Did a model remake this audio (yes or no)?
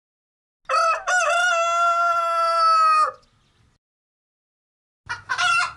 no